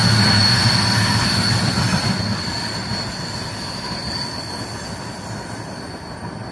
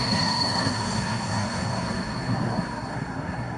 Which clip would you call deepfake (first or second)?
second